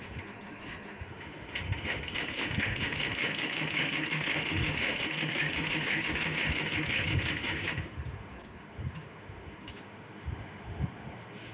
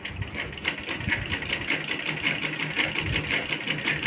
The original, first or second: second